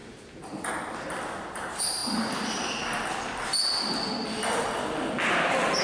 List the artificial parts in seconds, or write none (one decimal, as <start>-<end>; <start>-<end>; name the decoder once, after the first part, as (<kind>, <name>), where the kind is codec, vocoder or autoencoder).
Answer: 0.0-3.5 (vocoder, BigVGAN v2); 5.3-5.8